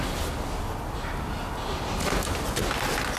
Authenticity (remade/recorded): recorded